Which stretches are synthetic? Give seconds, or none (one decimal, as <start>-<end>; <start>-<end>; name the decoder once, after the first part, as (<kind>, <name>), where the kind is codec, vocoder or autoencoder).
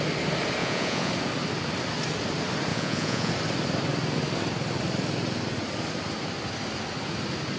0.6-1.1 (vocoder, Vocos); 2.7-3.3